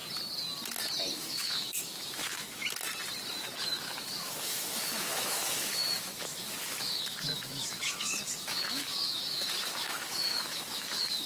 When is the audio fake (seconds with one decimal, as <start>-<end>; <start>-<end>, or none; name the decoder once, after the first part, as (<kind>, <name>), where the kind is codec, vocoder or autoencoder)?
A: 1.1-2.6 (autoencoder, DAC-VAE); 3.6-11.3